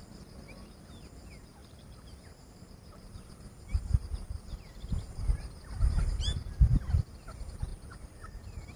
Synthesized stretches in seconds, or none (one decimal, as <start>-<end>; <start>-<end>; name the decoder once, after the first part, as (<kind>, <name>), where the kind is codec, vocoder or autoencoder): 1.6-3.3 (vocoder, BigVGAN v2); 3.7-6.4; 7.7-8.8